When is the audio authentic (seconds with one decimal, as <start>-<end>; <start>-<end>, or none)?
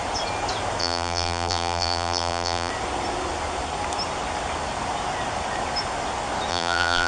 0.0-0.8; 2.7-6.5